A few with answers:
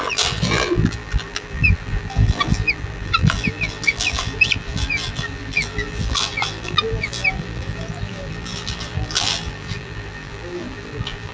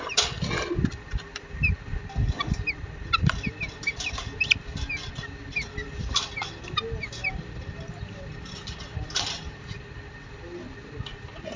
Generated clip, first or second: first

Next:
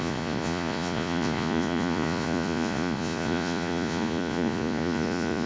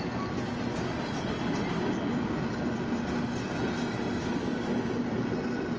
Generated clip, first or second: first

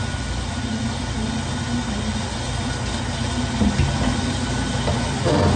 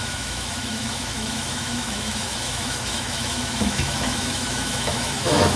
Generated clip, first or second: second